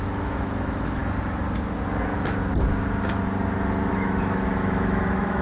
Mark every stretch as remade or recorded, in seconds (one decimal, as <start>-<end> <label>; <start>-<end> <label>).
0.0-1.0 remade; 1.0-3.9 recorded; 3.9-5.4 remade